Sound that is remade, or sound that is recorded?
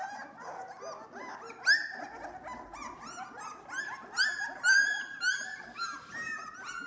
recorded